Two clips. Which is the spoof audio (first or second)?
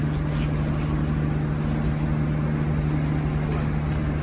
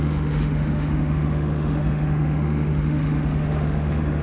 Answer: second